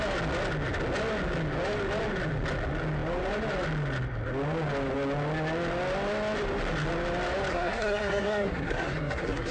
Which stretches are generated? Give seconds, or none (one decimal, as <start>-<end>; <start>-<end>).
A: 7.5-9.5